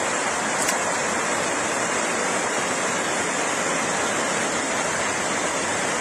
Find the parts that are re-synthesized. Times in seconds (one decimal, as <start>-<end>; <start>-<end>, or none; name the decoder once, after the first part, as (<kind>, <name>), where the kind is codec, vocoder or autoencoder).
1.0-4.6 (vocoder, BigVGAN v2)

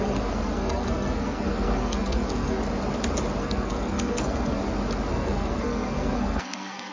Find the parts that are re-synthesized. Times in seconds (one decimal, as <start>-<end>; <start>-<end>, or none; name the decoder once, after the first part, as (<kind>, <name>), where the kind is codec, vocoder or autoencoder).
0.0-2.6 (codec, SNAC); 3.4-4.6; 5.1-6.9

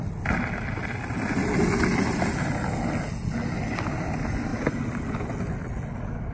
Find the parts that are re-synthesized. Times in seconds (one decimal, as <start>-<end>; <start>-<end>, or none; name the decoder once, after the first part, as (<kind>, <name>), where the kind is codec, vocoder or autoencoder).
none

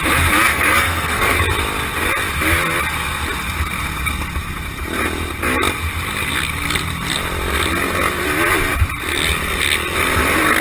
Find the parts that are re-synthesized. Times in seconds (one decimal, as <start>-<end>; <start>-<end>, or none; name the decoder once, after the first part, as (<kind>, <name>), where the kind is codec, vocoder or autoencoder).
0.5-1.4 (codec, SNAC)